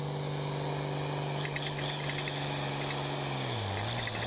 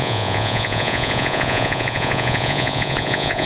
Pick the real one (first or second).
first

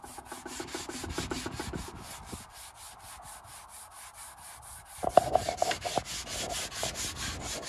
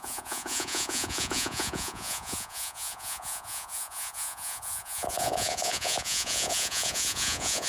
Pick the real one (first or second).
first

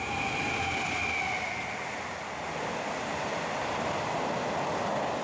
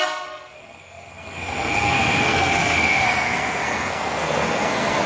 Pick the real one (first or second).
first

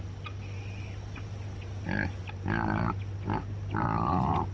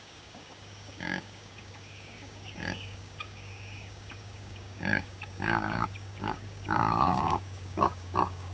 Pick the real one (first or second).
first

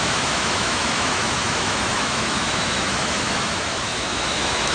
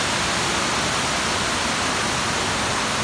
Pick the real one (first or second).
second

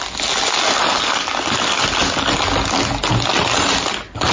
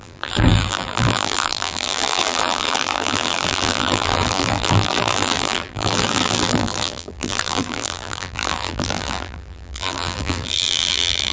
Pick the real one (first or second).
first